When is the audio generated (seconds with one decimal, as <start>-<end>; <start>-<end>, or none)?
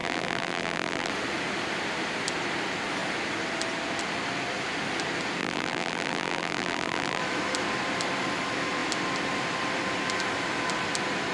0.0-1.1; 5.4-7.2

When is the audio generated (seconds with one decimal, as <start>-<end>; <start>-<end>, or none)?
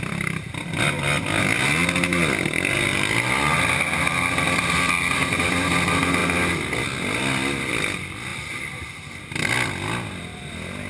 0.0-0.6; 4.6-6.2; 7.7-10.9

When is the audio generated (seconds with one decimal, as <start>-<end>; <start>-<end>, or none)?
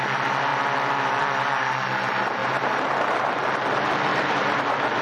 0.5-1.7; 2.4-3.0; 4.1-4.6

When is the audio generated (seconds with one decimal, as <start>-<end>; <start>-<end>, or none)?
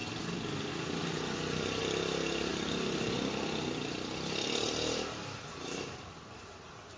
0.0-1.8; 2.5-6.5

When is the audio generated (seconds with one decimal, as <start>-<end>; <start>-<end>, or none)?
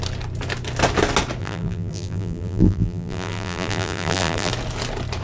1.4-4.5